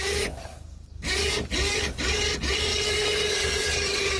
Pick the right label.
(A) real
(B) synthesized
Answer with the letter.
B